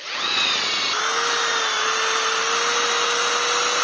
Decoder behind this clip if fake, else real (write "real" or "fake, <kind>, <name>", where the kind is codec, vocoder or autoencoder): real